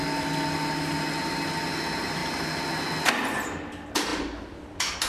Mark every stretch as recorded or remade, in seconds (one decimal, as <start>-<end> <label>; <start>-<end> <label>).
0.0-5.1 recorded